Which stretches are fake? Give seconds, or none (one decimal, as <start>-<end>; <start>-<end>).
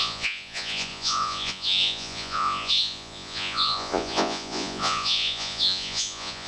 0.0-6.5